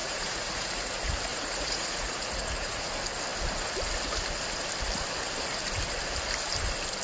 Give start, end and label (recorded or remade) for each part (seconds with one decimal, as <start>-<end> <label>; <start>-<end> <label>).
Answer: 0.0-0.9 remade; 0.9-1.3 recorded; 1.3-2.9 remade; 2.9-7.0 recorded